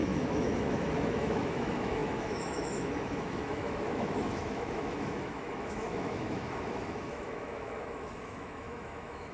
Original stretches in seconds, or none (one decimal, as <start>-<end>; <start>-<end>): none